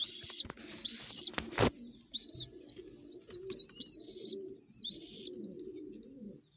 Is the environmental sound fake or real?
real